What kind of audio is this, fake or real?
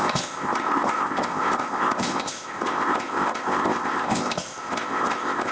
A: fake